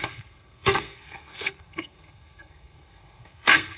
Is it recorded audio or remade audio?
remade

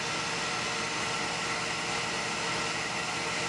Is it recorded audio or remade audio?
recorded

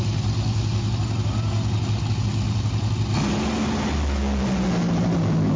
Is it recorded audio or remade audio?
recorded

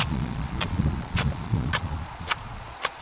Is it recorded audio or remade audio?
remade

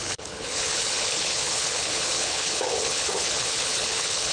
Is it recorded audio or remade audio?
remade